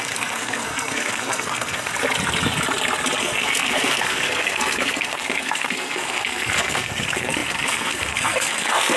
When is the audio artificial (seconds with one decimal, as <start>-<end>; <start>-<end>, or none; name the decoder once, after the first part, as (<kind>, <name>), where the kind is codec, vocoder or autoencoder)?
0.0-1.9 (codec, SNAC); 3.2-9.0

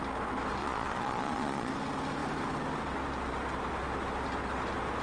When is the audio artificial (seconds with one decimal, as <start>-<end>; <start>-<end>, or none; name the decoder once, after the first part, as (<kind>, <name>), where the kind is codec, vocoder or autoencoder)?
0.6-1.7 (vocoder, Vocos)

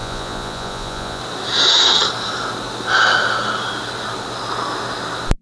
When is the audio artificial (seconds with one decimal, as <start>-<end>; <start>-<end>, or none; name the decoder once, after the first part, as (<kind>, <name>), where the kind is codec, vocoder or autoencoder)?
0.0-1.2 (vocoder, Vocos)

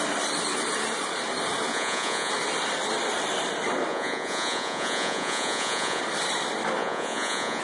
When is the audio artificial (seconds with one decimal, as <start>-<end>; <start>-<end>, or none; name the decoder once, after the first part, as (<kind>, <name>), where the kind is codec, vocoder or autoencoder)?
1.7-2.3 (vocoder, Vocos); 3.9-6.0; 6.8-7.6

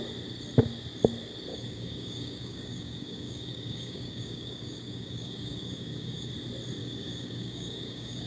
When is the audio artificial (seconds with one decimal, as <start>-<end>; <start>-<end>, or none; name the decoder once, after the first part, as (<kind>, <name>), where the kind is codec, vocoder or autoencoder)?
1.5-6.3 (codec, DAC); 6.8-8.3

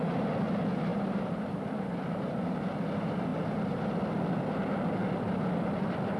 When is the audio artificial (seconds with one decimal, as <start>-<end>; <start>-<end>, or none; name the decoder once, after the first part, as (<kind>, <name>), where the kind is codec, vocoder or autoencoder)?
0.9-2.8 (vocoder, BigVGAN v2); 3.3-4.0

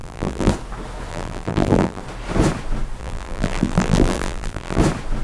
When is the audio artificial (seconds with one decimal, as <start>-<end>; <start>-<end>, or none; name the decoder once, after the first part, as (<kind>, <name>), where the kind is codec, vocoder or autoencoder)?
0.0-0.5 (vocoder, BigVGAN v2); 1.1-2.0; 3.0-4.8

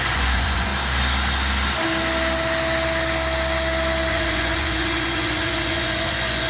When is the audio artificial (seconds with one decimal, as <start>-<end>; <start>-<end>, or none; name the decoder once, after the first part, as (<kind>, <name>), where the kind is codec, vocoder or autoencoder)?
0.0-0.7 (vocoder, Vocos); 4.1-6.5